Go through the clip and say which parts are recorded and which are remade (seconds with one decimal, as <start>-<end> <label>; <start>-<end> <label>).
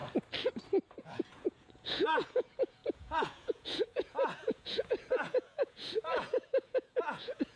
0.0-1.0 recorded; 1.0-7.6 remade